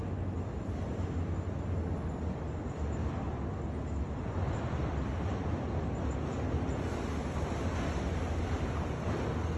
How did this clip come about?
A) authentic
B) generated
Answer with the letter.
A